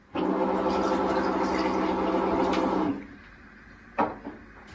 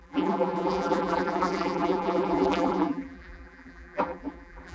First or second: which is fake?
second